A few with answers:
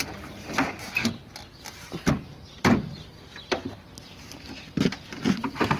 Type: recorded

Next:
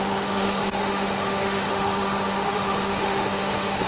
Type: remade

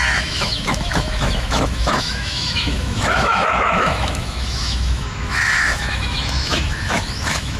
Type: remade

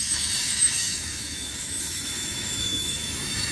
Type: remade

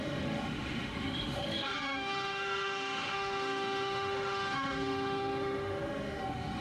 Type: remade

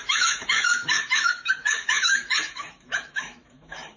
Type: remade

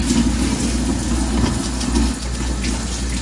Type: recorded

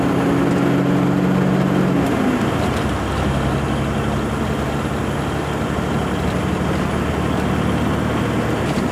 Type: recorded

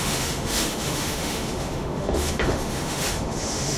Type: remade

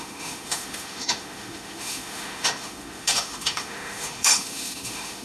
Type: remade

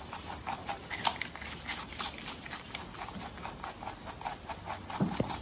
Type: recorded